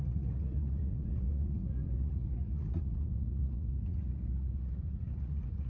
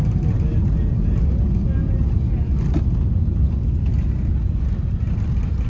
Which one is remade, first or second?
first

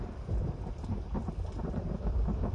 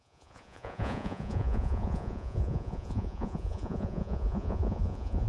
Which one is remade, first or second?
second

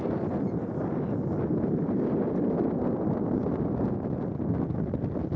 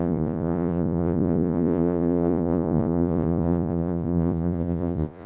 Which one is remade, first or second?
second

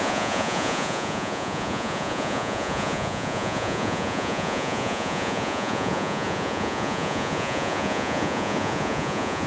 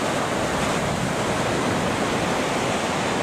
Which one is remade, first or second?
first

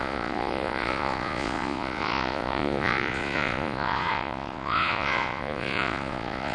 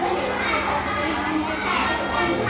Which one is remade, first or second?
first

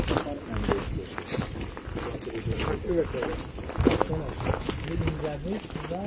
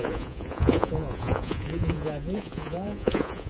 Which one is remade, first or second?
second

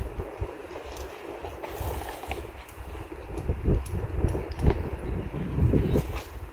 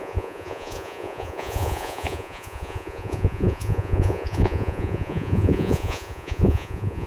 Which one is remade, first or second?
second